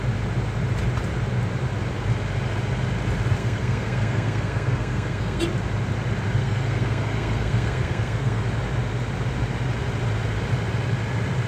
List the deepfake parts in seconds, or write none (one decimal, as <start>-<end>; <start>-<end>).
3.4-5.4; 6.4-8.4